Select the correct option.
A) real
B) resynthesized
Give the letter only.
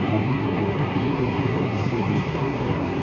B